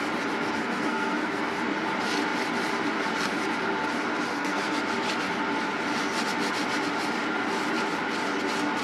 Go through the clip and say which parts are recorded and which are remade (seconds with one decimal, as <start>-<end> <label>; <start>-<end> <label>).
0.0-0.6 recorded; 0.6-1.4 remade; 1.4-4.3 recorded; 4.3-4.8 remade; 4.8-8.8 recorded